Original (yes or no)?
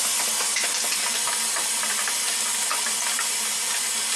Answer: no